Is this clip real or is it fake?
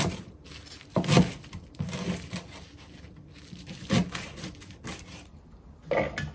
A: real